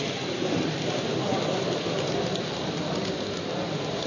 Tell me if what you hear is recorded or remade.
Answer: recorded